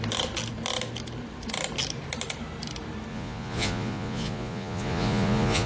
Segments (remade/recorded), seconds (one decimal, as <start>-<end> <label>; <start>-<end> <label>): 0.0-3.1 recorded; 3.1-5.7 remade